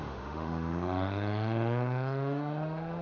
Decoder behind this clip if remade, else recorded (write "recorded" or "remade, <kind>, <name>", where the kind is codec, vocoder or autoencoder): remade, autoencoder, DAC-VAE